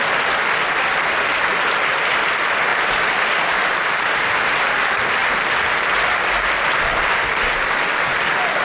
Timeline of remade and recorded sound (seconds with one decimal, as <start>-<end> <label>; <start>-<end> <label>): 0.0-5.2 remade; 5.2-7.9 recorded; 7.9-8.6 remade